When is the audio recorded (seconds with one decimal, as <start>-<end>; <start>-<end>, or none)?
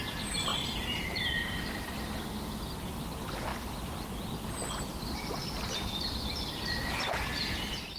0.0-0.5; 1.2-4.9; 6.9-8.0